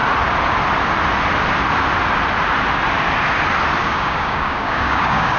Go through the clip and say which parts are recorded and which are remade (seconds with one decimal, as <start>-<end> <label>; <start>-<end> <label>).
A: 0.0-3.8 recorded; 3.8-5.4 remade